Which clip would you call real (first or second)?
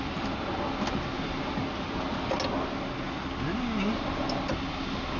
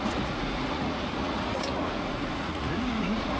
first